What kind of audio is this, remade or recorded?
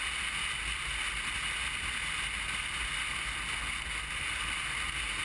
recorded